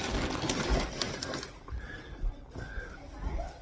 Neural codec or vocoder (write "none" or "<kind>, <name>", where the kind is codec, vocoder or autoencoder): none